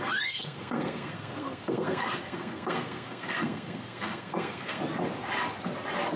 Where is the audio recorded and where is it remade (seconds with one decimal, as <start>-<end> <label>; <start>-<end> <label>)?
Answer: 0.0-4.8 remade; 4.8-6.2 recorded